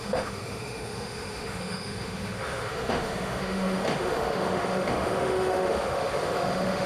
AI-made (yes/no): yes